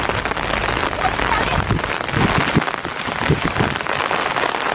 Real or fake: real